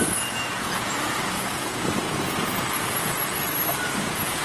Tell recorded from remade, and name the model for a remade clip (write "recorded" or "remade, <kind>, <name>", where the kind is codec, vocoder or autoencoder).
remade, vocoder, Vocos